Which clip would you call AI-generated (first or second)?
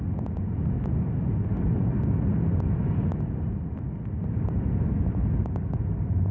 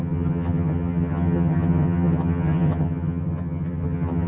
second